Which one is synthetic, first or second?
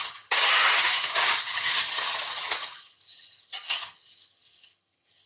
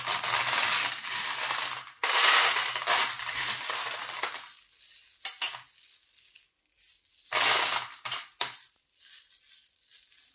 first